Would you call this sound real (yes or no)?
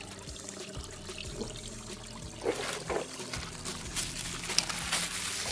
yes